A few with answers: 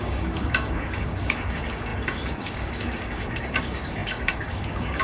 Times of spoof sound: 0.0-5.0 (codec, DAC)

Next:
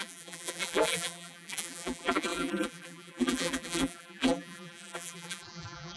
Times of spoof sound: 0.0-6.0 (vocoder, BigVGAN v2)